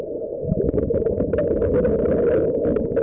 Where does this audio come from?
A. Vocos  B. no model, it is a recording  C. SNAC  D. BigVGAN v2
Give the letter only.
B